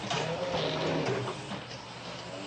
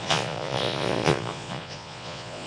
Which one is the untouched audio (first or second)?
first